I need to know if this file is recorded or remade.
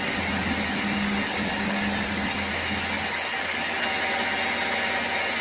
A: recorded